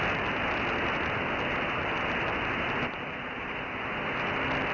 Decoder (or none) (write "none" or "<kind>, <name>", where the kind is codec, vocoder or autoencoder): none